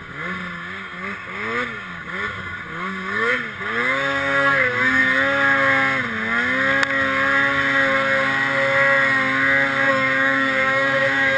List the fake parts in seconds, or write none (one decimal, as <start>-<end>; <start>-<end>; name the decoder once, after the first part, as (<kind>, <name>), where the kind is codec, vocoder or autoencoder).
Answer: 0.0-5.0 (codec, DAC); 9.9-11.4